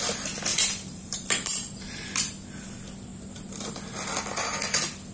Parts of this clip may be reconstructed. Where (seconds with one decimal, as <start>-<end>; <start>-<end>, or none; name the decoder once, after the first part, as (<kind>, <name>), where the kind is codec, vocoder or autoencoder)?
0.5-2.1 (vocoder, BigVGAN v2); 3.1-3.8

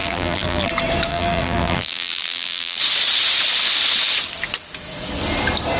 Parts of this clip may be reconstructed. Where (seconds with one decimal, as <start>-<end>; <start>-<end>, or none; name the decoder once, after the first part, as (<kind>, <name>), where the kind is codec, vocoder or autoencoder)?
0.0-0.7 (vocoder, BigVGAN v2); 1.1-2.8

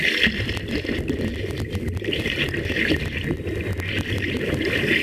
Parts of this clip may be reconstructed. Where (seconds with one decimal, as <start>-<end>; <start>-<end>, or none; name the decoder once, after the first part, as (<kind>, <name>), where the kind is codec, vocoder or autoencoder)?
1.3-2.2 (vocoder, BigVGAN v2)